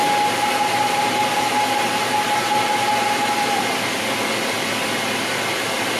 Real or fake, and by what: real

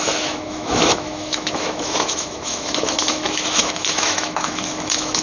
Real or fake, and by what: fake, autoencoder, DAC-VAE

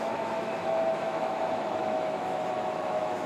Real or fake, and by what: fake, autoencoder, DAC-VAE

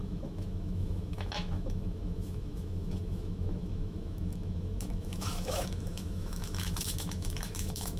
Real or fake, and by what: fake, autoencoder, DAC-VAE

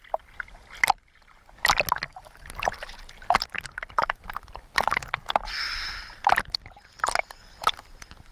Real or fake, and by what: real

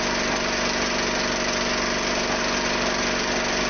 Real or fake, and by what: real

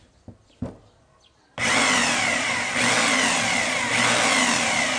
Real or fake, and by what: real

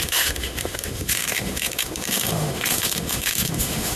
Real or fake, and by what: fake, autoencoder, DAC-VAE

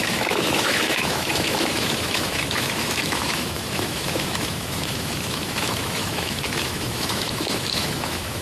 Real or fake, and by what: fake, autoencoder, DAC-VAE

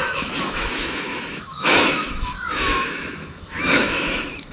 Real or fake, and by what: fake, autoencoder, DAC-VAE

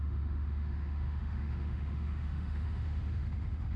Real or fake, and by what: fake, autoencoder, DAC-VAE